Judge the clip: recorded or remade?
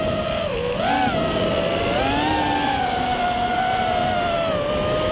recorded